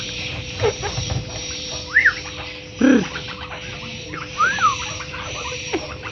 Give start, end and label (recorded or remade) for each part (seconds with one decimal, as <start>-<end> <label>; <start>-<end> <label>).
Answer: 0.0-1.7 remade; 1.7-4.2 recorded; 4.2-6.1 remade